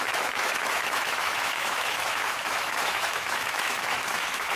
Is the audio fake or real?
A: fake